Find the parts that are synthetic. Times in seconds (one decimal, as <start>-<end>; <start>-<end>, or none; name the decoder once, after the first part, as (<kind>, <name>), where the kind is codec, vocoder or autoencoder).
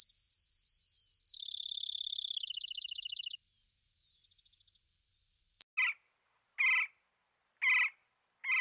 none